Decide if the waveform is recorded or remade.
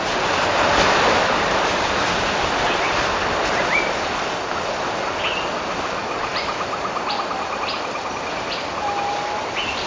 recorded